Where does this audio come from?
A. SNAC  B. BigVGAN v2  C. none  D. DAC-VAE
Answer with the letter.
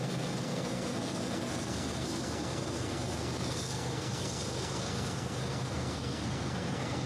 A